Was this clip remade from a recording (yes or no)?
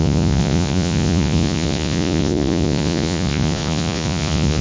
yes